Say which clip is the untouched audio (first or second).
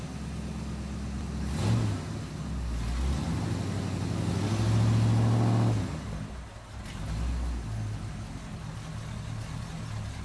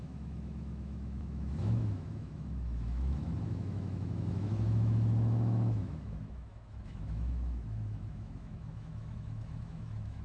first